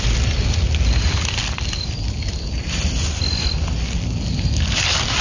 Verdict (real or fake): real